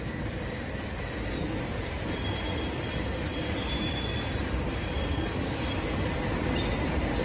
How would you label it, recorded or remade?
recorded